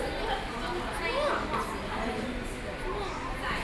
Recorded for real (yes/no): yes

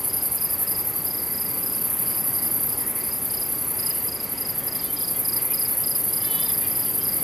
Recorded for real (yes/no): yes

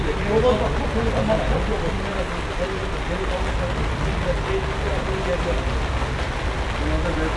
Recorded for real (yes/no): yes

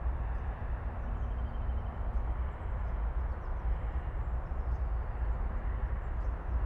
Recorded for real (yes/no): yes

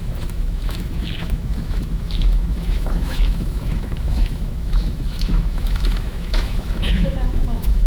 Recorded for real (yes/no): no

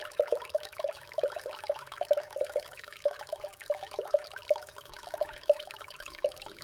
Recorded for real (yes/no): no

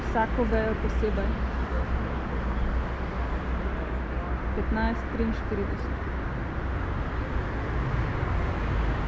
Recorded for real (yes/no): yes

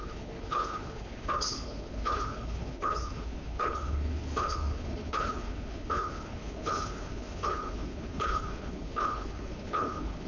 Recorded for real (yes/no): no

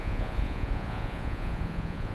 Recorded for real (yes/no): no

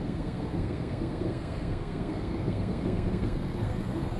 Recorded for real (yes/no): no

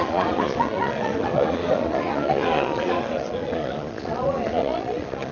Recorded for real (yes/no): no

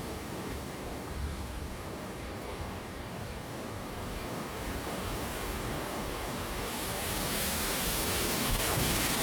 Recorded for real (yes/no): no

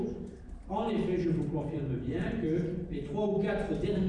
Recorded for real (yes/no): yes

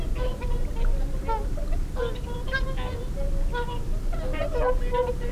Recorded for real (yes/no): yes